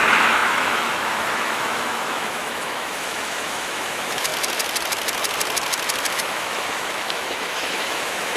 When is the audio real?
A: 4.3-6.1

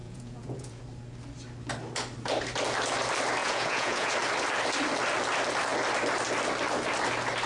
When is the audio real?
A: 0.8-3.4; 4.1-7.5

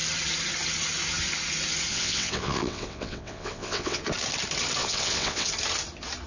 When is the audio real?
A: 0.0-1.9; 4.0-4.8; 5.5-6.3